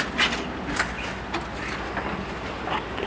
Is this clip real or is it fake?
real